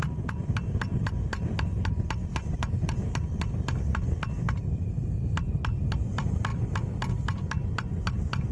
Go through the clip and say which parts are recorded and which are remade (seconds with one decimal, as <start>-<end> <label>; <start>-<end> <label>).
0.0-8.5 recorded

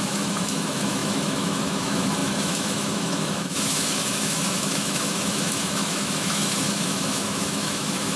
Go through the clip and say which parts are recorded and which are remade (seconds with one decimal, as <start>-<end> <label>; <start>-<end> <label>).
0.0-8.2 remade

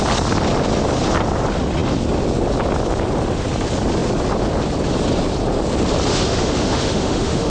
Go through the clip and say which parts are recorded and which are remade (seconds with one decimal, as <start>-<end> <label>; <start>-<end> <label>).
0.0-6.1 recorded; 6.1-7.5 remade

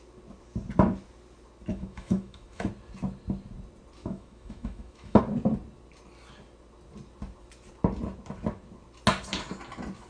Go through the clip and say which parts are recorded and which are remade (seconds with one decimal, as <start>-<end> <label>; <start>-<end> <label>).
0.0-1.7 recorded; 1.7-2.7 remade; 2.7-4.0 recorded; 4.0-5.2 remade; 5.2-10.1 recorded

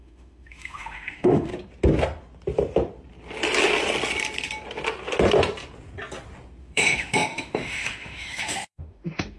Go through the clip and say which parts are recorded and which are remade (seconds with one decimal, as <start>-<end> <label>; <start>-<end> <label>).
0.0-1.5 remade; 1.5-6.6 recorded; 6.6-9.4 remade